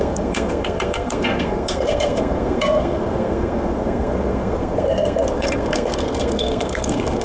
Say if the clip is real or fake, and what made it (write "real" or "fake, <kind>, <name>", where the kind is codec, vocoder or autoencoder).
fake, codec, SNAC